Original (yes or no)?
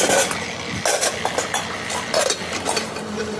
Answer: yes